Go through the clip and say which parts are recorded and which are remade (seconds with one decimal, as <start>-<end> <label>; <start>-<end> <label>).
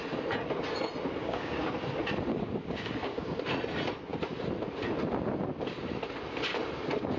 0.0-1.2 recorded; 1.2-1.7 remade; 1.7-2.3 recorded; 2.3-3.4 remade; 3.4-7.2 recorded